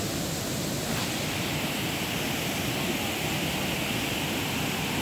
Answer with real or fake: real